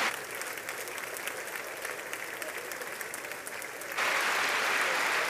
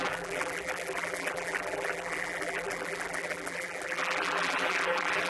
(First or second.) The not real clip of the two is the second